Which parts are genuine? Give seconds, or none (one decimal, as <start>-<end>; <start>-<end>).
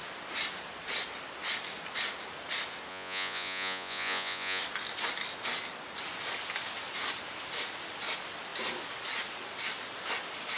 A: 0.0-2.9; 4.6-10.6